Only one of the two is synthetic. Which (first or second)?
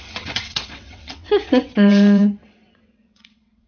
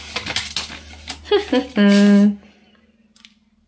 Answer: first